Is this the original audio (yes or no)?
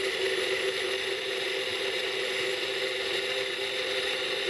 yes